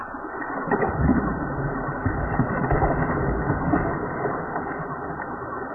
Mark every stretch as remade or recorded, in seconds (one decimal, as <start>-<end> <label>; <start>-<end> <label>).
0.0-5.7 recorded